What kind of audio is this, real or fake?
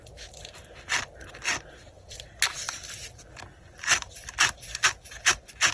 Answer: real